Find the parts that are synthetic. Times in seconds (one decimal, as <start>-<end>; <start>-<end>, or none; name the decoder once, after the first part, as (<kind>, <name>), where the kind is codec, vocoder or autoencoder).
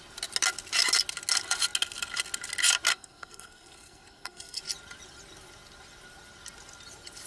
2.9-4.6 (codec, SNAC)